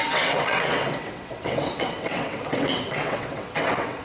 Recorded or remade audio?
remade